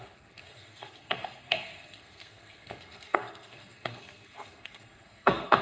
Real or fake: fake